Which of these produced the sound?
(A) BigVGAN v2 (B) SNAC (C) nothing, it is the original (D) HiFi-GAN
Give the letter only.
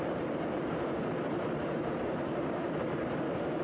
A